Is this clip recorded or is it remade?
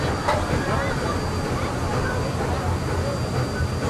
recorded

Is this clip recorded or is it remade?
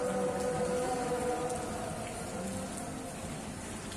recorded